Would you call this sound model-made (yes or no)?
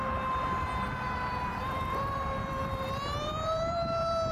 yes